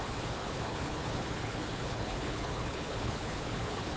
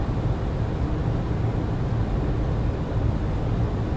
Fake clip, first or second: first